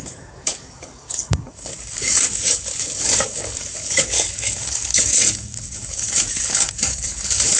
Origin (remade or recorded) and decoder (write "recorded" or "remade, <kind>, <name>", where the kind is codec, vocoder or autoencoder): remade, codec, DAC